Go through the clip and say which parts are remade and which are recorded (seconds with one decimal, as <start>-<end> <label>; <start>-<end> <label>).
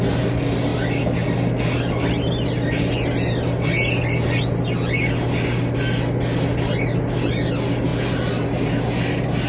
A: 0.0-9.5 recorded